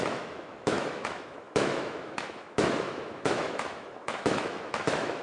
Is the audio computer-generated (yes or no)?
yes